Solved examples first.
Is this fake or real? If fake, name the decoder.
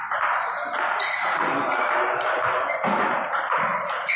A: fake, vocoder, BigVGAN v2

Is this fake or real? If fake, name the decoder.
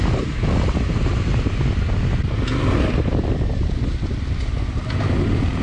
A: real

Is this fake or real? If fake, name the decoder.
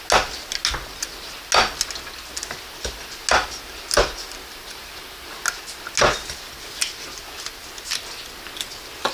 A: real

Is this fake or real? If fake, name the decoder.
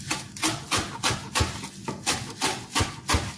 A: real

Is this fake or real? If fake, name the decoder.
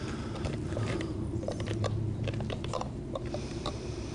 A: fake, vocoder, BigVGAN v2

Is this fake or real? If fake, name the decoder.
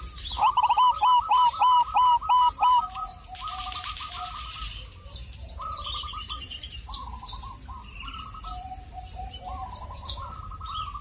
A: fake, vocoder, BigVGAN v2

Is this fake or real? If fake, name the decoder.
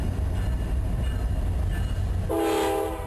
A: real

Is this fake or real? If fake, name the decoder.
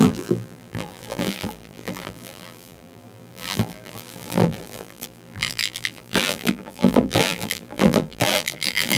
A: fake, vocoder, BigVGAN v2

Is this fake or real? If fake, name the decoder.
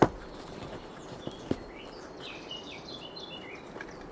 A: fake, vocoder, BigVGAN v2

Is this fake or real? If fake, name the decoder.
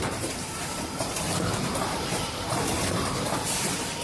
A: fake, vocoder, BigVGAN v2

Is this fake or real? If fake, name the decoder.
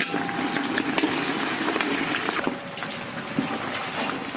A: real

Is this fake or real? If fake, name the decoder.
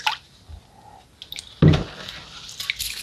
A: real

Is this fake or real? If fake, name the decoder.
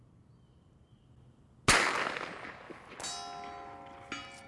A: real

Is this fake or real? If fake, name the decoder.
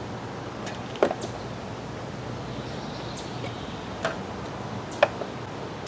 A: real